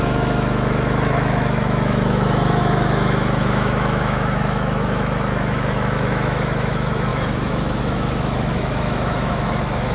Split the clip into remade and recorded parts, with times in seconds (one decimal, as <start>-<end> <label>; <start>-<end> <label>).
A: 0.0-9.9 remade